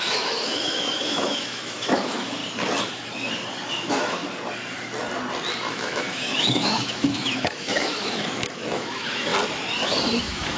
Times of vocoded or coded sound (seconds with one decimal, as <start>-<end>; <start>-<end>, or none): 0.0-2.4; 3.7-4.2; 5.7-9.3; 10.2-10.6

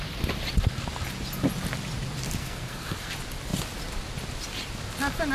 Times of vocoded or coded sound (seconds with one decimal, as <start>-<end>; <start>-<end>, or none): 2.4-3.1

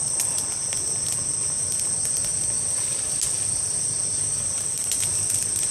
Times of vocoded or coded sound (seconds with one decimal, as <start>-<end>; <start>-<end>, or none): none

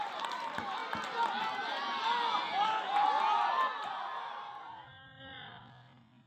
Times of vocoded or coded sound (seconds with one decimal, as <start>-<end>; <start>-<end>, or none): 0.0-0.8; 3.5-6.3

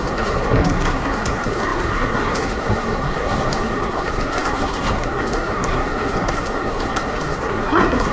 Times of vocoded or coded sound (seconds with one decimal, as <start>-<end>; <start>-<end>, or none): 0.0-8.1

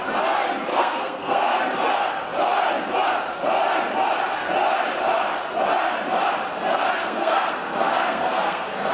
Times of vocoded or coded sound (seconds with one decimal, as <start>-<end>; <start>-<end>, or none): 0.7-1.6; 7.0-8.9